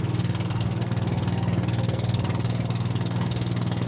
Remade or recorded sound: remade